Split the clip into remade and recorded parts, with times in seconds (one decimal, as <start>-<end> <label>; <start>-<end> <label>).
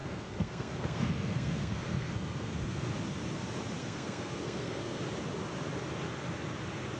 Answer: 0.0-2.9 remade; 2.9-3.8 recorded; 3.8-5.0 remade; 5.0-7.0 recorded